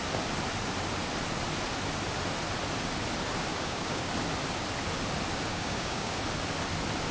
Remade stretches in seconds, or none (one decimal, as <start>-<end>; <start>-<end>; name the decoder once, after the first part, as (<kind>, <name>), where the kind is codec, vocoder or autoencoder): 3.5-4.1 (codec, DAC); 5.5-6.2